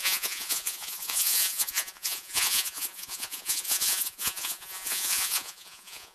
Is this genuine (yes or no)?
no